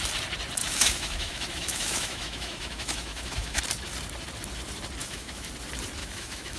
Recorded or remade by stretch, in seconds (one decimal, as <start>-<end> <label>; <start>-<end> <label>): 0.0-0.6 recorded; 0.6-3.6 remade; 3.6-5.0 recorded; 5.0-5.5 remade; 5.5-6.0 recorded; 6.0-6.6 remade